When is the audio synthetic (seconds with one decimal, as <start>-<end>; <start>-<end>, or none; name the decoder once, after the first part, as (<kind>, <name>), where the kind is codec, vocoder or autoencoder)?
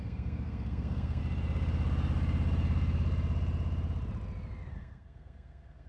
0.0-1.2 (codec, SNAC); 4.7-5.9